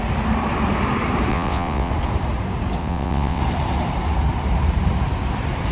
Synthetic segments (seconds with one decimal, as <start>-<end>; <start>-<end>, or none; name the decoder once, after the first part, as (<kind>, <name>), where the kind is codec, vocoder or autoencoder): 1.3-1.9 (vocoder, WaveNeXt); 2.8-3.4